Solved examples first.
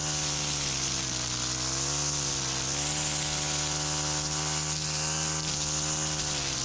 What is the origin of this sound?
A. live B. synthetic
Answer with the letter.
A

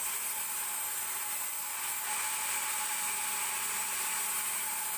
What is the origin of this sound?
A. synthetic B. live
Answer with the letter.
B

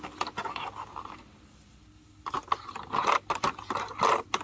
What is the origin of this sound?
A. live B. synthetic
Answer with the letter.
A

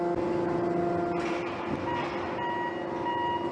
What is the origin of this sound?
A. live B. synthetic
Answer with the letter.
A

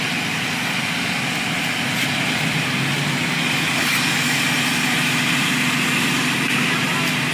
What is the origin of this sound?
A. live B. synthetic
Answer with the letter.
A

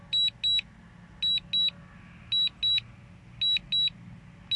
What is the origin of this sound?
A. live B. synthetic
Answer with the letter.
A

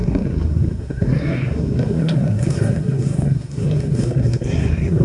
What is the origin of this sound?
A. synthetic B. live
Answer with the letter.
A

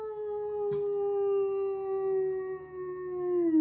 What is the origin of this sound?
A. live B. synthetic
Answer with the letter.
A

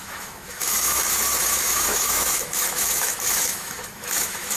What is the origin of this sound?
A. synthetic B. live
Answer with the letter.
A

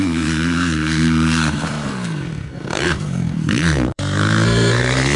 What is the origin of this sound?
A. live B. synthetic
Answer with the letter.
B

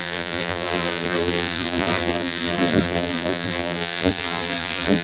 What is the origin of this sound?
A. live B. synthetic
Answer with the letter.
B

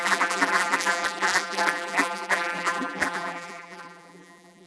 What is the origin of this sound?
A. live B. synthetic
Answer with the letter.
B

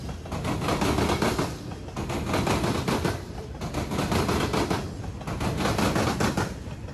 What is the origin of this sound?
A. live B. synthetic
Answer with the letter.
A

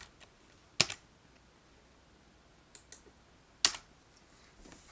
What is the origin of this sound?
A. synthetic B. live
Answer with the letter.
B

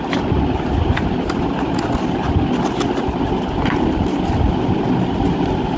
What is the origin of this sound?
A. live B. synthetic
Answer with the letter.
A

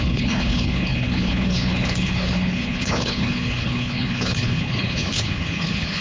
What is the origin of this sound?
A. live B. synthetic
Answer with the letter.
B